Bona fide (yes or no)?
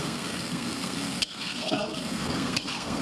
no